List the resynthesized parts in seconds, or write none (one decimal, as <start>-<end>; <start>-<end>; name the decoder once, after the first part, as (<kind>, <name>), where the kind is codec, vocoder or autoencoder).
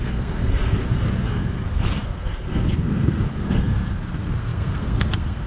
0.0-5.5 (codec, SNAC)